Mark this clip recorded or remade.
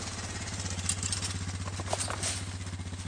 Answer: recorded